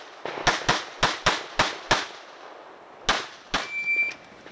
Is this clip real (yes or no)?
yes